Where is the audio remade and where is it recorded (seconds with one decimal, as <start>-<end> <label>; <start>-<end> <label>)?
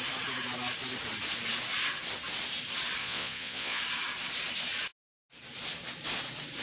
0.0-3.0 recorded; 3.0-3.8 remade; 3.8-6.6 recorded